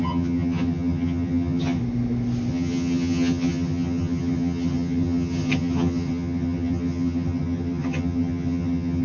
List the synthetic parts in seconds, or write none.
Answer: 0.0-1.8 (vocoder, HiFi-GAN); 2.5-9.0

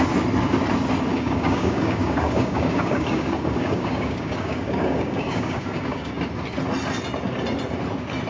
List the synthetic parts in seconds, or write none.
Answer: 1.1-6.1 (codec, DAC)

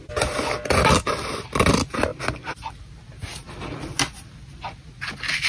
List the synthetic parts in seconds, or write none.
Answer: none

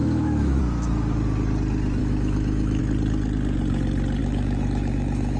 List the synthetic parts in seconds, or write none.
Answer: 0.0-0.6 (autoencoder, DAC-VAE); 2.0-2.8; 4.2-5.4

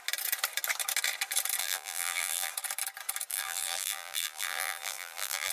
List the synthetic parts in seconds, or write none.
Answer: 1.6-2.5 (vocoder, BigVGAN v2); 3.3-5.5

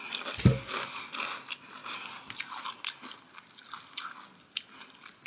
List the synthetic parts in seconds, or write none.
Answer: none

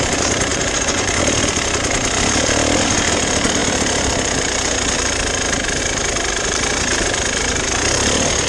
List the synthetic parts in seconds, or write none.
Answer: 0.5-1.2 (vocoder, Vocos)

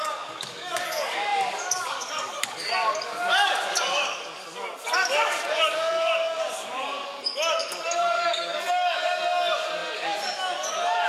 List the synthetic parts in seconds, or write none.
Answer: 0.0-11.1 (codec, DAC)